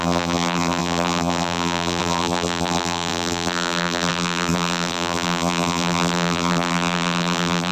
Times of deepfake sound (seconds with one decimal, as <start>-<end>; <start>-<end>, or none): 0.0-7.7